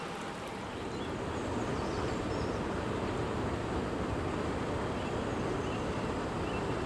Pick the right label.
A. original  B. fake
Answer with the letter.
A